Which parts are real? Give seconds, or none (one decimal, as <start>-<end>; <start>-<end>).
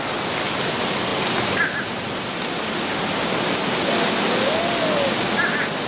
0.0-5.9